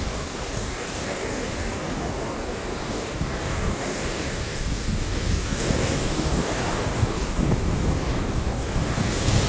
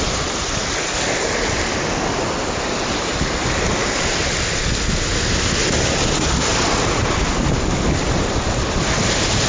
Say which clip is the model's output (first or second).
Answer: first